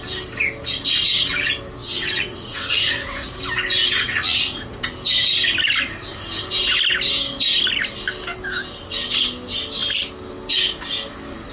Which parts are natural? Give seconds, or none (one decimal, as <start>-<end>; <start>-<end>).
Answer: 0.0-1.8; 3.4-3.8; 4.8-11.5